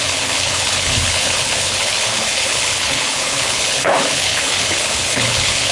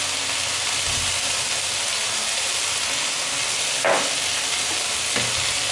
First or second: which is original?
second